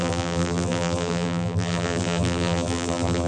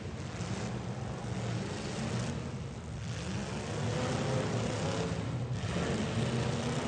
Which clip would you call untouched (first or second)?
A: second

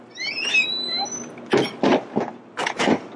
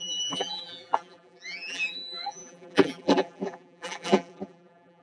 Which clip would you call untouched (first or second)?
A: first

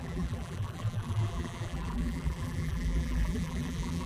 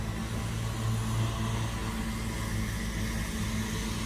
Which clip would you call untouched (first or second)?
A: second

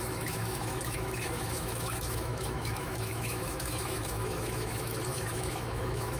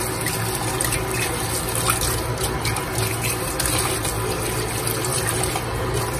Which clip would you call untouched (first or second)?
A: second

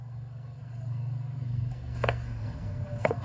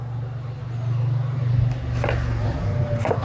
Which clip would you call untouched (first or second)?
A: second